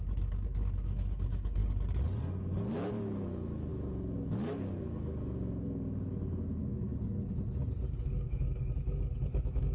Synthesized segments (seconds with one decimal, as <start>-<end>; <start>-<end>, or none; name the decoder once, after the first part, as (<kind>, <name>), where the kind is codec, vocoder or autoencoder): 0.0-1.6 (autoencoder, DAC-VAE); 2.7-6.9; 8.3-9.7